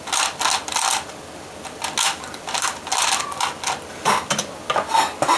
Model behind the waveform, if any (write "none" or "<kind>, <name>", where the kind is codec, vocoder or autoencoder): none